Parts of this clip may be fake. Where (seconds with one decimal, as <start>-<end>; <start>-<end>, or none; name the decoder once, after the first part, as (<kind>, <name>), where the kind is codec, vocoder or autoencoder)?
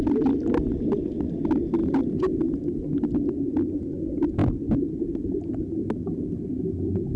1.8-2.6 (vocoder, Vocos)